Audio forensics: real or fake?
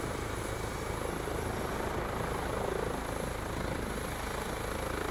real